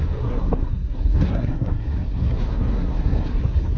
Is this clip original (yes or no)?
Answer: no